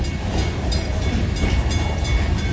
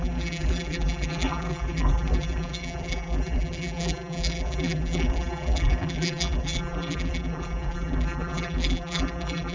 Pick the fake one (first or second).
second